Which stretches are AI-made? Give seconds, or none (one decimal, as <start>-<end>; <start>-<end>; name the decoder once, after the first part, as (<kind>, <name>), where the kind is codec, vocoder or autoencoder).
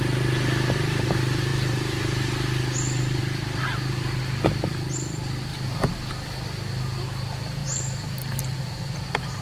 1.5-3.2 (vocoder, BigVGAN v2); 7.6-8.9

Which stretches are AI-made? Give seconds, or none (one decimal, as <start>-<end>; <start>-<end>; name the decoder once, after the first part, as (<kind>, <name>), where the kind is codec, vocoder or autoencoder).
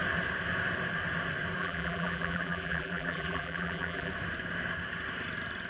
1.6-4.1 (vocoder, BigVGAN v2)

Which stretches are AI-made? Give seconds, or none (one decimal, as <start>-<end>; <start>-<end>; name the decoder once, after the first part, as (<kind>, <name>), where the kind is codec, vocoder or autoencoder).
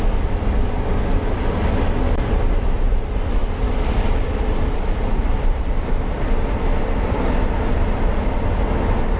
1.1-2.4 (vocoder, BigVGAN v2); 3.4-7.2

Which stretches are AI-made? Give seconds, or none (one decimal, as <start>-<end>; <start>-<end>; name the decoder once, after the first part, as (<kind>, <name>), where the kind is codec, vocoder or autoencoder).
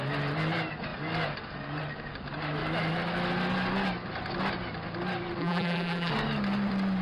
5.4-6.1 (vocoder, BigVGAN v2)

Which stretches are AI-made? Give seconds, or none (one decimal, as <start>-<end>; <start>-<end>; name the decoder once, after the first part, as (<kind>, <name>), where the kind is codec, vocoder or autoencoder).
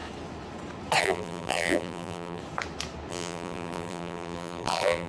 1.0-2.4 (vocoder, BigVGAN v2); 3.1-5.1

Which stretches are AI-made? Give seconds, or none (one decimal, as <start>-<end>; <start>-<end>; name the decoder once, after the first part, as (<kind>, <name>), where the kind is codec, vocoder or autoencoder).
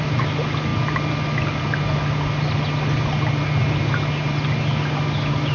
none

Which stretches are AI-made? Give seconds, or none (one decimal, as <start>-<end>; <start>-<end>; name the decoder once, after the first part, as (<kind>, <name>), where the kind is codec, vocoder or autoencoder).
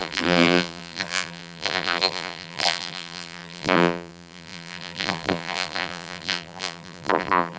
0.0-7.6 (vocoder, BigVGAN v2)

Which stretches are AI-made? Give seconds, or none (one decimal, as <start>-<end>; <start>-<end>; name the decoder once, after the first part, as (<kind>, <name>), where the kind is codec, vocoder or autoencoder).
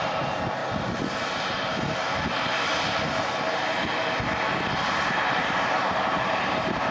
0.0-0.6 (vocoder, BigVGAN v2); 4.7-6.9